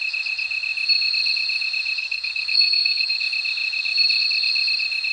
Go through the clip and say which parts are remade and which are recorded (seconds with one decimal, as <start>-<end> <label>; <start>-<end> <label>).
0.0-2.0 recorded; 2.0-3.2 remade; 3.2-5.1 recorded